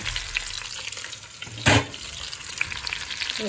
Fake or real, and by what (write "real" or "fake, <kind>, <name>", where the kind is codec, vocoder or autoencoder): real